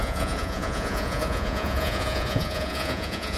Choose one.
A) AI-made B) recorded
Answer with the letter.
A